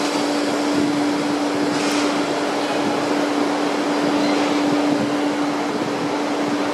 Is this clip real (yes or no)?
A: yes